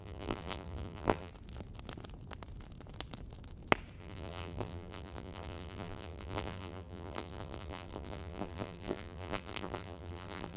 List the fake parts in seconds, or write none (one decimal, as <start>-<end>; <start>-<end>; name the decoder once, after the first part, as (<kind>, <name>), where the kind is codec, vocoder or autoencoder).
0.0-1.3 (vocoder, BigVGAN v2); 4.0-10.6